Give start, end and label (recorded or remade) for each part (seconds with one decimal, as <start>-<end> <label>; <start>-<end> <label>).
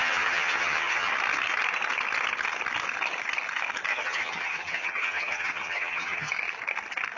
0.0-1.1 remade; 1.1-3.9 recorded; 3.9-6.3 remade; 6.3-7.2 recorded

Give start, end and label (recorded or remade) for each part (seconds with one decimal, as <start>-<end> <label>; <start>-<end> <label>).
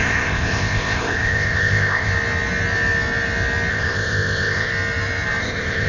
0.0-2.1 remade; 2.1-3.7 recorded; 3.7-4.7 remade; 4.7-5.4 recorded; 5.4-5.9 remade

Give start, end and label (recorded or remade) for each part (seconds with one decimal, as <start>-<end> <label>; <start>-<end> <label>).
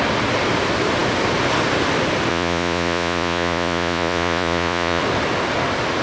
0.0-2.3 recorded; 2.3-5.0 remade; 5.0-6.0 recorded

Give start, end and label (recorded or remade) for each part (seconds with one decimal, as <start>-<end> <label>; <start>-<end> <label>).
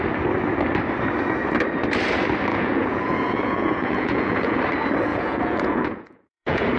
0.0-2.5 recorded; 2.5-4.6 remade; 4.6-5.1 recorded; 5.1-6.8 remade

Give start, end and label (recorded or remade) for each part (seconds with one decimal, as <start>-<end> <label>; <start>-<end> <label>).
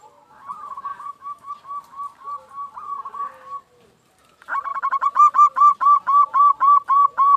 0.0-0.9 recorded; 0.9-1.5 remade; 1.5-7.4 recorded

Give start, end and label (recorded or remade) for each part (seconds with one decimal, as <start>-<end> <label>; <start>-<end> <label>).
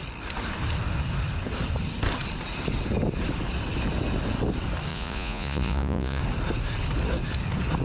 0.0-4.9 recorded; 4.9-6.2 remade; 6.2-7.8 recorded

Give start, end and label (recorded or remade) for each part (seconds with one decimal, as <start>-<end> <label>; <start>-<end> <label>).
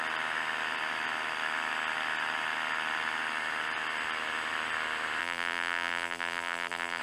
0.0-5.2 recorded; 5.2-7.0 remade